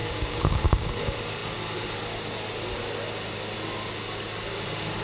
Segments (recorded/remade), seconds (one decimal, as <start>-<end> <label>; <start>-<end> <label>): 0.0-0.9 remade; 0.9-5.0 recorded

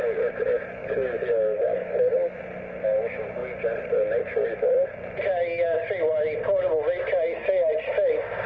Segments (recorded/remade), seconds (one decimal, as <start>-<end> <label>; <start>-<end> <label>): 0.0-0.8 recorded; 0.8-2.4 remade; 2.4-8.5 recorded

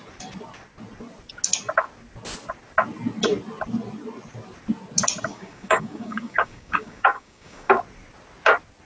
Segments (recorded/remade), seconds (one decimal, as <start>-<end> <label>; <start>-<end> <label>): 0.0-5.3 recorded; 5.3-7.7 remade; 7.7-8.8 recorded